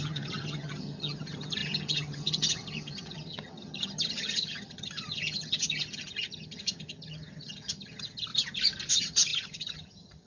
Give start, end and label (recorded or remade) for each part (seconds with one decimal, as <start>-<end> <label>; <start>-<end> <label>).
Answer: 0.0-8.3 remade; 8.3-8.9 recorded; 8.9-10.3 remade

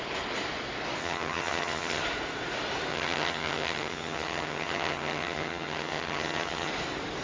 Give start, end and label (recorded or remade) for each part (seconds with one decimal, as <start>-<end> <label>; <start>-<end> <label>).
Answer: 0.0-1.0 recorded; 1.0-2.0 remade; 2.0-2.9 recorded; 2.9-6.7 remade; 6.7-7.2 recorded

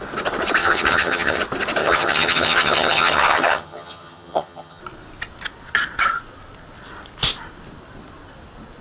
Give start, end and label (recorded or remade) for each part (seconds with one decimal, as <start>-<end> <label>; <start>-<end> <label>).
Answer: 0.0-0.6 recorded; 0.6-1.4 remade; 1.4-1.8 recorded; 1.8-4.8 remade; 4.8-8.8 recorded

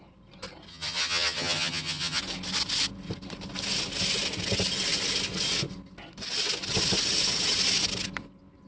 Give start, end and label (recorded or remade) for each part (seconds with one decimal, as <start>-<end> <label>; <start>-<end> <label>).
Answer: 0.0-0.7 recorded; 0.7-2.2 remade; 2.2-8.7 recorded

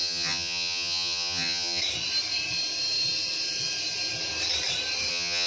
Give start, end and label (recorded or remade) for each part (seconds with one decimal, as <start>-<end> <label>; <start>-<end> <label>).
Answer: 0.0-1.8 remade; 1.8-5.1 recorded; 5.1-5.5 remade

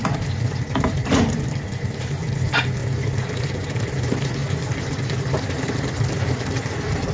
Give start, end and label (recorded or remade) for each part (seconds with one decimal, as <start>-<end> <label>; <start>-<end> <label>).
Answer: 0.0-7.1 recorded